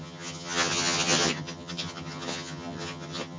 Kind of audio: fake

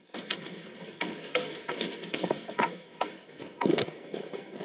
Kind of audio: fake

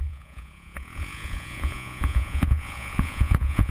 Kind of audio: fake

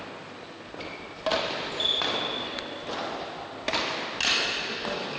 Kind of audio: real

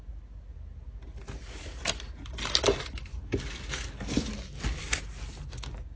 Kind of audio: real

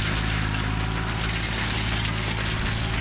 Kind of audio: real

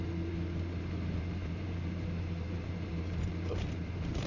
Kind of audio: fake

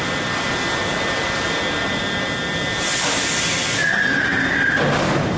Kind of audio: real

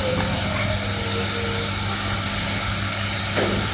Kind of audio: real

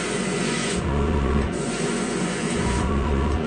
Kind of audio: fake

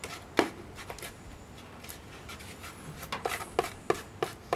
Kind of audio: real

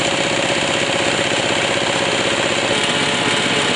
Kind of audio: real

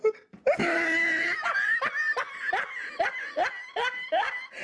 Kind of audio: real